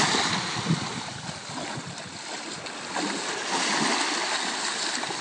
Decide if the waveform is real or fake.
real